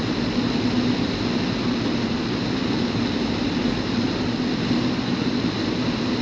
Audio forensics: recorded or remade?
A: recorded